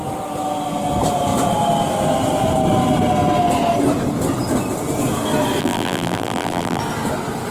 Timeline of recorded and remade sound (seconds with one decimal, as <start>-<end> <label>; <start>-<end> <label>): 0.0-5.6 recorded; 5.6-6.8 remade; 6.8-7.5 recorded